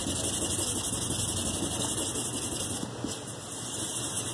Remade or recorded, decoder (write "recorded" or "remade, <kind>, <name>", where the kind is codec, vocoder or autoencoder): recorded